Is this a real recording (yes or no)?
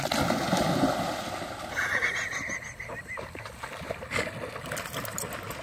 yes